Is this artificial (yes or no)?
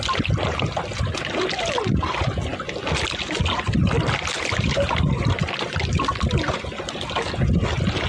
no